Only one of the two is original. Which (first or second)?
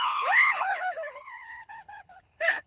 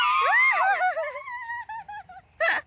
second